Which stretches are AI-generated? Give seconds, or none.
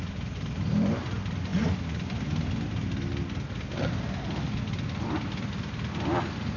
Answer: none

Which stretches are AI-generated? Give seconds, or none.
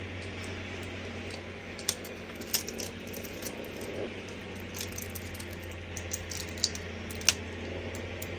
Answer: 1.6-2.5 (codec, DAC)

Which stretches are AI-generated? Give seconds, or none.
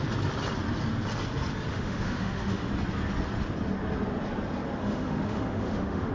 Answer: 1.7-2.7 (autoencoder, DAC-VAE); 4.8-6.1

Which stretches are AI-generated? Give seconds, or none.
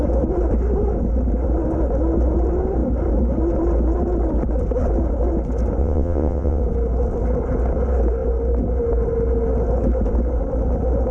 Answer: 5.8-6.6 (vocoder, WaveNeXt)